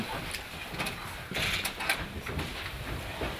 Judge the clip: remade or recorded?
recorded